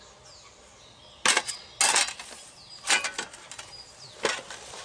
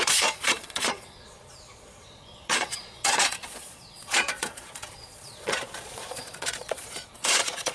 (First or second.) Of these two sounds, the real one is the first